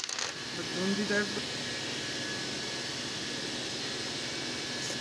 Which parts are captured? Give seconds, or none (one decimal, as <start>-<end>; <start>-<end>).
0.0-5.0